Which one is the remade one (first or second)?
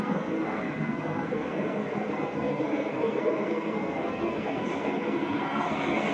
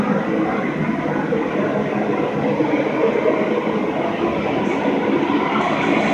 first